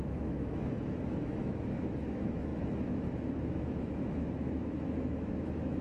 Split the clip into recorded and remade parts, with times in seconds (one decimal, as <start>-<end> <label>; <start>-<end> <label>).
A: 0.0-5.8 remade